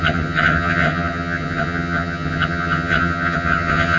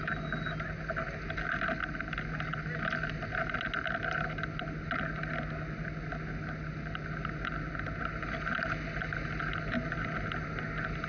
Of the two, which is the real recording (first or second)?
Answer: second